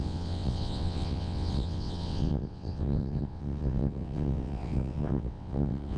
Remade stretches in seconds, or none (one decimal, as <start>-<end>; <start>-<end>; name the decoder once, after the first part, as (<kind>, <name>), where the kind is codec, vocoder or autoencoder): 0.0-6.0 (vocoder, WaveNeXt)